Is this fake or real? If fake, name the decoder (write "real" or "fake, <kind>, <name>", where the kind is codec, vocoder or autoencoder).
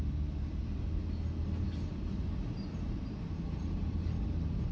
real